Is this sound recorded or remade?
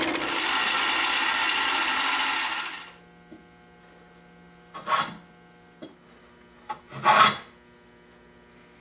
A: recorded